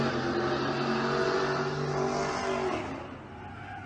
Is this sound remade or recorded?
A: recorded